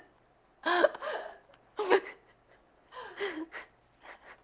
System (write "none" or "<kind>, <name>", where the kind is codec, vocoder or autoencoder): none